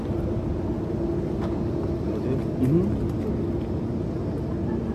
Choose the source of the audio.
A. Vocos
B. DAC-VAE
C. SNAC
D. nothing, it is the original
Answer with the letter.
D